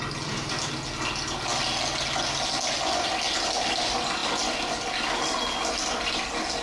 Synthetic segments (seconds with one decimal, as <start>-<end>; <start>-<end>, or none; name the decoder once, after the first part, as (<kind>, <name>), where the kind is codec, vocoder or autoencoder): none